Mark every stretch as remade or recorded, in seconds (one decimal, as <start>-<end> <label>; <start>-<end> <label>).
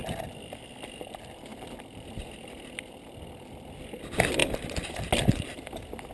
0.0-6.1 recorded